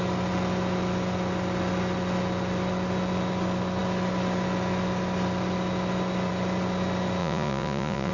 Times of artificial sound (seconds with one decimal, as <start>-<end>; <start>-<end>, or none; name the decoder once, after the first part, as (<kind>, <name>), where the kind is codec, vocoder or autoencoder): 7.2-8.1 (vocoder, Vocos)